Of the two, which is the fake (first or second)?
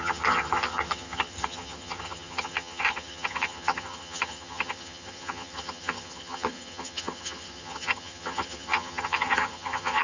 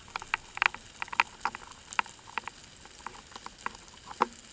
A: first